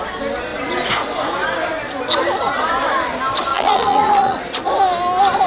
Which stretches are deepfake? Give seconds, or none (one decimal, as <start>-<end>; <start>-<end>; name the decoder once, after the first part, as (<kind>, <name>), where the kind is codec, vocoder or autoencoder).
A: 3.5-4.4 (vocoder, Vocos)